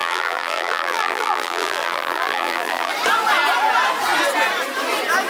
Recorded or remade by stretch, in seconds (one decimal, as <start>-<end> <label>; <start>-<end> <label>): 0.0-2.9 remade; 2.9-5.3 recorded